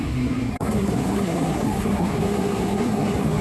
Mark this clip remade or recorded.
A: remade